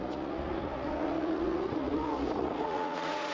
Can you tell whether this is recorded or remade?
remade